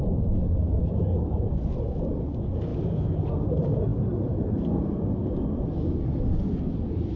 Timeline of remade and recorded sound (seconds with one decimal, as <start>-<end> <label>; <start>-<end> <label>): 0.0-7.2 recorded